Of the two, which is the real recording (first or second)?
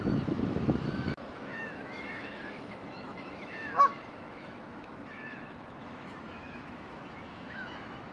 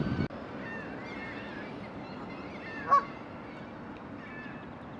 second